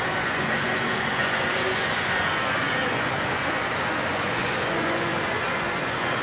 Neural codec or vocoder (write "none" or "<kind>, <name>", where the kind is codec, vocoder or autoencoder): vocoder, Vocos